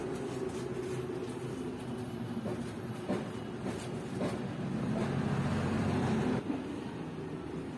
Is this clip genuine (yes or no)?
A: yes